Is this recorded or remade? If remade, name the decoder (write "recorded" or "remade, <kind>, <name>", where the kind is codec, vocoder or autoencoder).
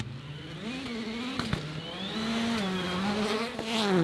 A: recorded